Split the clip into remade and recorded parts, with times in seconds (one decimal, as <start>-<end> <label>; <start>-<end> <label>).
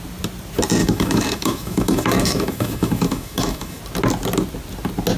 0.0-0.8 recorded; 0.8-3.8 remade; 3.8-5.2 recorded